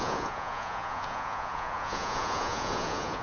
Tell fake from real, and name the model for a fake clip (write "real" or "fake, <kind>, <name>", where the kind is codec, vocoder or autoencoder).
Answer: fake, vocoder, Vocos